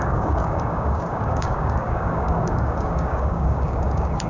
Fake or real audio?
fake